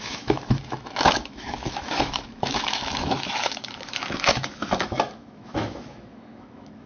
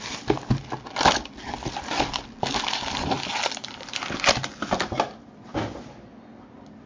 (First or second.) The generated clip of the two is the first